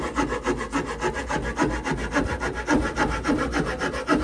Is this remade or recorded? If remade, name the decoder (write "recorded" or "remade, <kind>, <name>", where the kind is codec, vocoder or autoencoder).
recorded